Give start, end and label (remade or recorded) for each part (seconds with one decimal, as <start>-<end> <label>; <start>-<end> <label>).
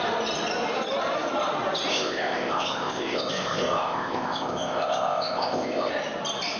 0.0-1.9 recorded; 1.9-5.9 remade; 5.9-6.6 recorded